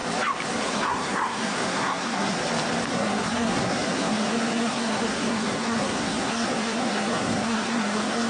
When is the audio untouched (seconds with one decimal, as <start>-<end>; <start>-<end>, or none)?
0.0-0.6; 2.4-2.9

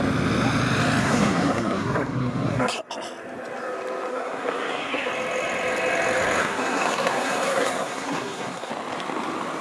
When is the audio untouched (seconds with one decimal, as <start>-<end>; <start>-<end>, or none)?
0.0-1.0; 2.8-4.1; 5.1-6.4; 8.7-9.6